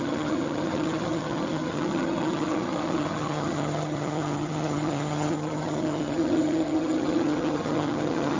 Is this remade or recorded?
remade